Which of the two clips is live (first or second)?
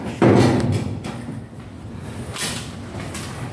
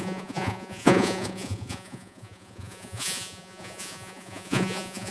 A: first